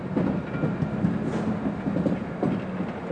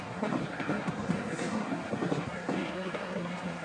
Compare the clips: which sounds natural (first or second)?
first